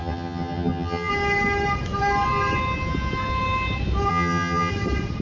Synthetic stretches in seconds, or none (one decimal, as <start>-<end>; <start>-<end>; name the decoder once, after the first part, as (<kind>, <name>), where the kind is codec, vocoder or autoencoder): 0.0-1.1 (vocoder, HiFi-GAN); 4.1-4.7